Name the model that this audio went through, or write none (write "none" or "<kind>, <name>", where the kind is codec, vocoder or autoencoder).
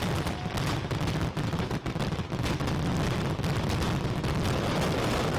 none